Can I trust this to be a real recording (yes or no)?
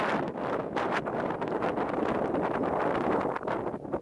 yes